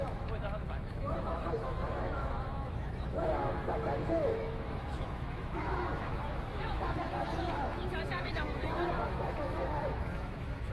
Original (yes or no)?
no